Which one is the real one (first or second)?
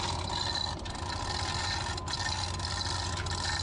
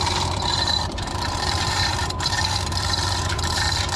first